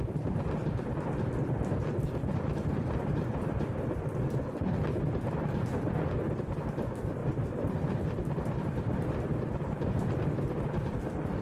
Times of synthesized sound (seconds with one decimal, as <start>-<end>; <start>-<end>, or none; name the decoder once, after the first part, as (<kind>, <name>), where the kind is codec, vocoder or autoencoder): 2.2-3.8 (vocoder, BigVGAN v2); 7.2-10.6